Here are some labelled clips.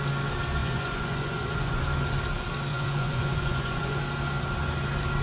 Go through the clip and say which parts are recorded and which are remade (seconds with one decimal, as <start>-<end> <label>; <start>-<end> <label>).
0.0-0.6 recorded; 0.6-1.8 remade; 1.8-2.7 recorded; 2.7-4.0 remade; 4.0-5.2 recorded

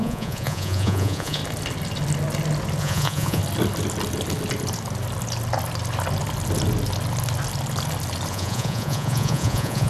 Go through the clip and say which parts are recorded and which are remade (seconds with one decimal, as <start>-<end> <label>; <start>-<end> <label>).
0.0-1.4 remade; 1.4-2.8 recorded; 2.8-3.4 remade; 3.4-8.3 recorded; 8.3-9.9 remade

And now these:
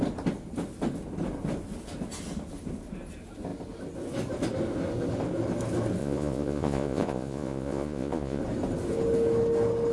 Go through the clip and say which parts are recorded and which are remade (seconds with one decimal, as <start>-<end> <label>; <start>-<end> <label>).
0.0-6.0 recorded; 6.0-8.4 remade; 8.4-9.9 recorded